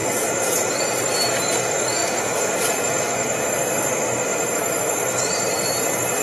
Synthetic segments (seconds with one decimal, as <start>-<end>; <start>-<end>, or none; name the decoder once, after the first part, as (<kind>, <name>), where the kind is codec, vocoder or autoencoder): 0.0-0.7 (vocoder, Vocos); 2.0-3.5

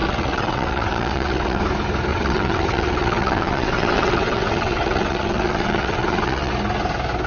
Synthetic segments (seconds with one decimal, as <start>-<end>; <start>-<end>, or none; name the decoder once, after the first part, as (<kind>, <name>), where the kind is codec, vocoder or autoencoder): 0.0-1.6 (vocoder, WaveNeXt); 2.1-6.5

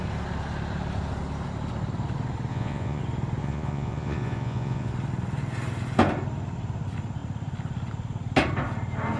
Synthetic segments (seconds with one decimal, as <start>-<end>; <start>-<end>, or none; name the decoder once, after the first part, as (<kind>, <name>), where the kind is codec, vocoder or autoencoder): 2.5-3.0 (vocoder, Vocos); 3.4-4.9

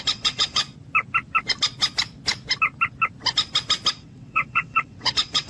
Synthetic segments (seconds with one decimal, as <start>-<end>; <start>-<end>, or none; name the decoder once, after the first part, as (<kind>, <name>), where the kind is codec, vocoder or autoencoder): 0.0-0.6 (vocoder, WaveNeXt); 3.9-5.5

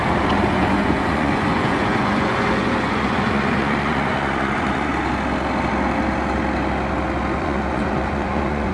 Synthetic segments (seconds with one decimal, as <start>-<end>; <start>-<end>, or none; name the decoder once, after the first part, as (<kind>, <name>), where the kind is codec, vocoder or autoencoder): 0.5-4.9 (vocoder, Vocos); 7.4-8.7

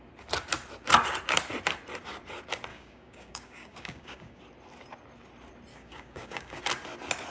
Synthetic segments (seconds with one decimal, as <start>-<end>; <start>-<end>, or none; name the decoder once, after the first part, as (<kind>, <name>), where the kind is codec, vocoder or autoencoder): 2.7-4.4 (codec, DAC); 5.7-6.6